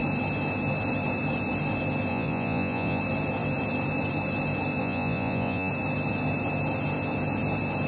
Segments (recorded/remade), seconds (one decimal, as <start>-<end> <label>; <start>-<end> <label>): 0.0-2.1 recorded; 2.1-3.0 remade; 3.0-4.8 recorded; 4.8-5.7 remade; 5.7-7.9 recorded